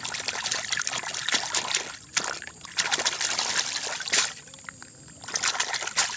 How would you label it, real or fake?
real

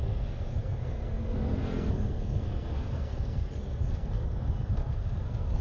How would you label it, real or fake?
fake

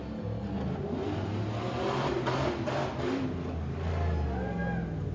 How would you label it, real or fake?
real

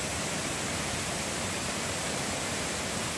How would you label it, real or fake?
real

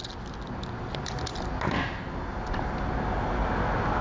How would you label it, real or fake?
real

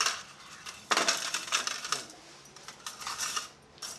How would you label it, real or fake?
real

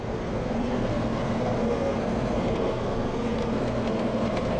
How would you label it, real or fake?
fake